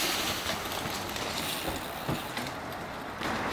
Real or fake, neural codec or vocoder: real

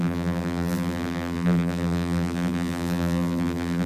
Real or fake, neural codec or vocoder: fake, vocoder, BigVGAN v2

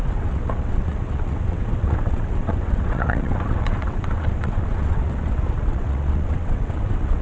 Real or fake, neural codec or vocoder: fake, vocoder, WaveNeXt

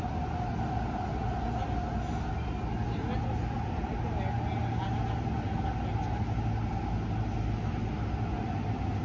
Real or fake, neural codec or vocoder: real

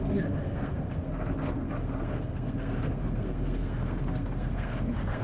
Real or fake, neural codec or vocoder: fake, codec, SNAC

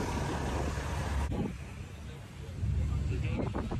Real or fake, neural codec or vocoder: real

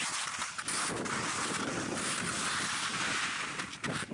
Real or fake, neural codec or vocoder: real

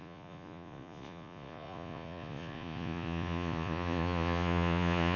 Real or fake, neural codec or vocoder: fake, vocoder, Vocos